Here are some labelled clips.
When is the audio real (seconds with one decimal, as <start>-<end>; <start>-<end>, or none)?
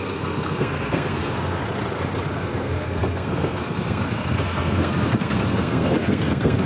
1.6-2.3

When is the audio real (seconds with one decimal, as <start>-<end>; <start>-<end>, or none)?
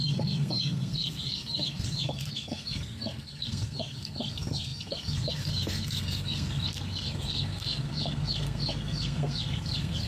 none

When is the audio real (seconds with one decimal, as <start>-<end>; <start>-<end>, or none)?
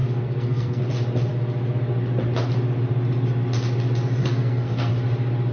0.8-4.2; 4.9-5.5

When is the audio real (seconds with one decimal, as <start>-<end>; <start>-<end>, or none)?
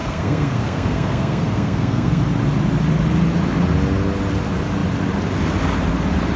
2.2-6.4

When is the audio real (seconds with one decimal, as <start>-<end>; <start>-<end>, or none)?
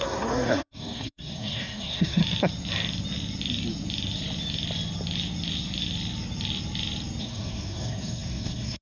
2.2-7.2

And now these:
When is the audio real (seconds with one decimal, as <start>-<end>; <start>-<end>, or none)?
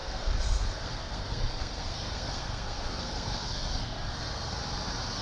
4.6-5.2